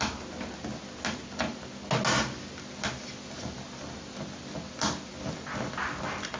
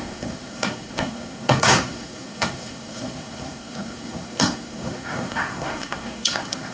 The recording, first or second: first